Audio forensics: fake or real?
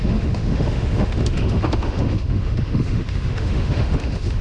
fake